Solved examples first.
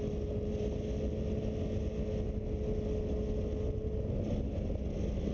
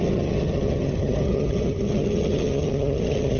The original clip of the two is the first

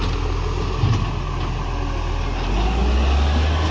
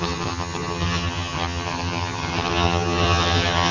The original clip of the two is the first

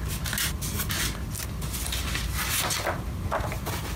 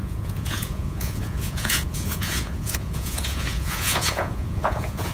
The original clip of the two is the first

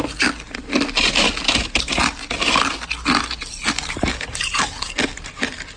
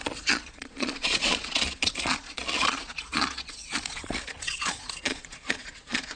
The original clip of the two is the first